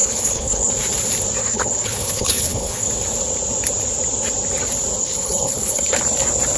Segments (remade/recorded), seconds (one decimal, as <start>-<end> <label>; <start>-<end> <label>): 0.0-0.7 remade; 0.7-1.4 recorded; 1.4-2.9 remade; 2.9-5.0 recorded; 5.0-6.0 remade; 6.0-6.6 recorded